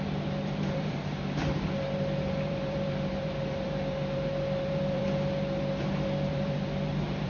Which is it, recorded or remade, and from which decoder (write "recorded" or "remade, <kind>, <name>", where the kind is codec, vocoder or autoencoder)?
remade, vocoder, BigVGAN v2